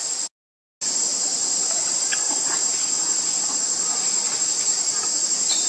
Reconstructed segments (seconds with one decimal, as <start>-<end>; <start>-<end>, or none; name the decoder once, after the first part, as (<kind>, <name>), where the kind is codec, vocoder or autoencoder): none